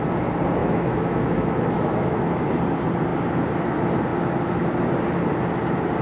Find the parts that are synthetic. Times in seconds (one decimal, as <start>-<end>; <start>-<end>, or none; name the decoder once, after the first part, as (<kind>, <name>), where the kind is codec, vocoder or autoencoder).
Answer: 0.6-2.4 (autoencoder, DAC-VAE)